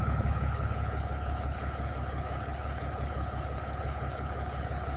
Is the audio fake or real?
fake